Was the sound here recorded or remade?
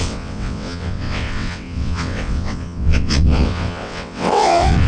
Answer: remade